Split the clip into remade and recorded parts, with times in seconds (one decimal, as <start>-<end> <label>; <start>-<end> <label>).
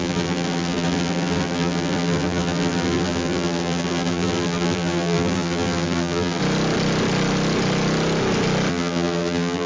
0.0-6.4 remade; 6.4-8.7 recorded; 8.7-9.7 remade